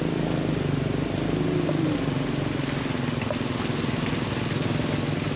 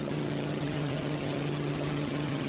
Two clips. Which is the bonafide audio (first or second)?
first